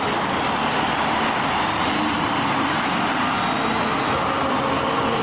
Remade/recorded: recorded